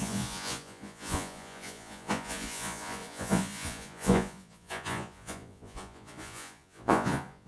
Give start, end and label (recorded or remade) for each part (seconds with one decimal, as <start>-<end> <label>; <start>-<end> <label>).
0.0-7.5 remade